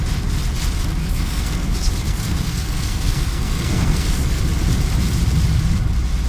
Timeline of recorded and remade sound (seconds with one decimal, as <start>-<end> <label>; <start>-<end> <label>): 0.0-1.0 recorded; 1.0-4.4 remade; 4.4-6.3 recorded